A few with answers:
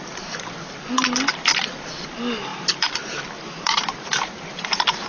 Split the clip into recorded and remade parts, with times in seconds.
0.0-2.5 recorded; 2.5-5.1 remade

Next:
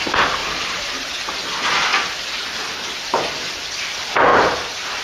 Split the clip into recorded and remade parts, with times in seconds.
0.0-0.4 recorded; 0.4-1.3 remade; 1.3-4.3 recorded; 4.3-5.0 remade

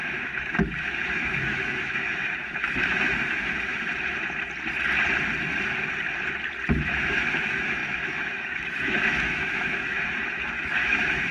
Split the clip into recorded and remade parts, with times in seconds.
0.0-3.9 remade; 3.9-6.7 recorded; 6.7-11.3 remade

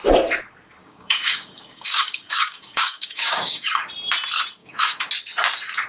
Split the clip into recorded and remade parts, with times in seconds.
0.0-0.8 recorded; 0.8-3.9 remade; 3.9-4.6 recorded; 4.6-5.1 remade; 5.1-5.9 recorded

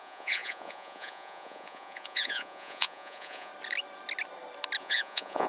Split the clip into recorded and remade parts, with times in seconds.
0.0-3.5 remade; 3.5-4.8 recorded; 4.8-5.5 remade

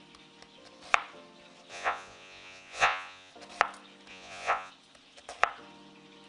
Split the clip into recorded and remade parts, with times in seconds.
0.0-1.7 recorded; 1.7-3.3 remade; 3.3-4.1 recorded; 4.1-4.7 remade; 4.7-6.3 recorded

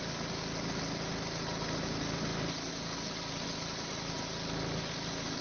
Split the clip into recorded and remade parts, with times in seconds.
0.0-5.4 recorded

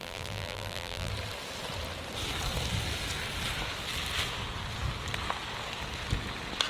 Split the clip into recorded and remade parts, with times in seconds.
0.0-1.1 remade; 1.1-6.7 recorded